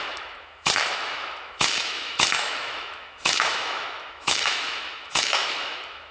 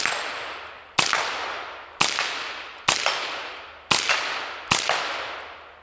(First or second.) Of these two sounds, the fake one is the first